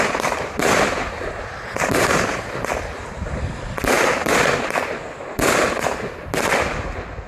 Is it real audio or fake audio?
real